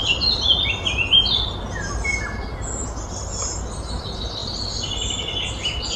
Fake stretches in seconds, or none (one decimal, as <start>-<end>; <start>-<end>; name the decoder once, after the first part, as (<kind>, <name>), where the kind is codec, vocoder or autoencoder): none